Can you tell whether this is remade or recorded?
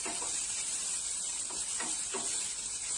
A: remade